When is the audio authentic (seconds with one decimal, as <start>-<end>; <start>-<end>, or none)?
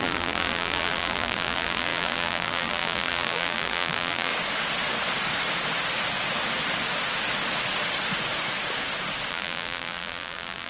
4.3-9.3